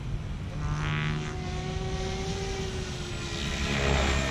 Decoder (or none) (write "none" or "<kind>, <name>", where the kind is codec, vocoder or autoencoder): none